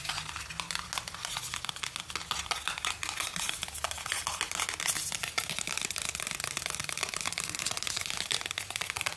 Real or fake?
real